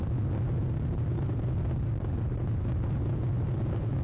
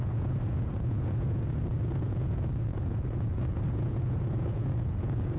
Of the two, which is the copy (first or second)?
second